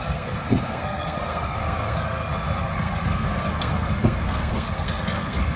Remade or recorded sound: remade